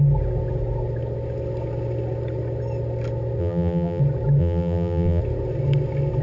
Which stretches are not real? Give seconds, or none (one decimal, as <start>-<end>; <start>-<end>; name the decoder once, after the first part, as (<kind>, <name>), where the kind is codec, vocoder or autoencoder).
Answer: 3.4-4.0 (vocoder, BigVGAN v2); 4.4-5.2